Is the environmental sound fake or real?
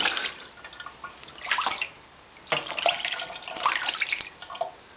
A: real